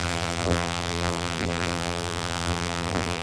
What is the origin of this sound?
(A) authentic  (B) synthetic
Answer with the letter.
B